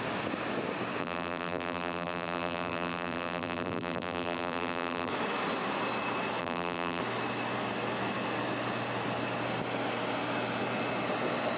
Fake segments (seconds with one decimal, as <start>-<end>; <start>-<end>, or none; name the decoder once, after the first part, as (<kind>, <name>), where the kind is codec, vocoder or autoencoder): 1.0-5.1 (vocoder, BigVGAN v2); 6.4-7.0